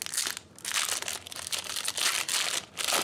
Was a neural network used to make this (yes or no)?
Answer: no